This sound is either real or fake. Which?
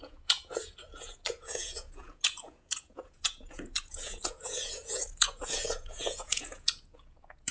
fake